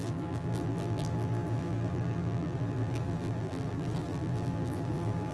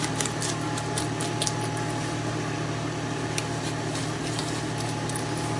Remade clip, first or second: first